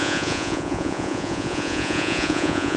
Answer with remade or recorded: remade